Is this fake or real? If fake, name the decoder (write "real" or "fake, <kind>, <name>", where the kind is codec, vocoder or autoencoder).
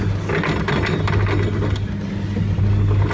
real